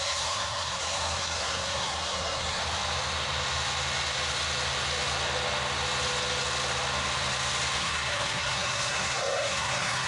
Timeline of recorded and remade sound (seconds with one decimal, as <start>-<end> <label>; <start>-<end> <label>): 0.0-2.6 remade; 2.6-7.8 recorded; 7.8-10.1 remade